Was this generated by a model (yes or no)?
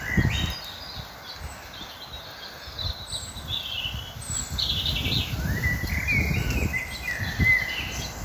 no